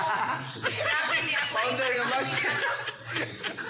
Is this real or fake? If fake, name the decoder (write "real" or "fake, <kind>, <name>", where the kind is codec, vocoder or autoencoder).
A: fake, vocoder, BigVGAN v2